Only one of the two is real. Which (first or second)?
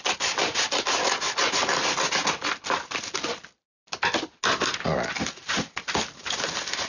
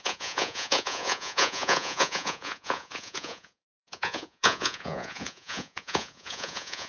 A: first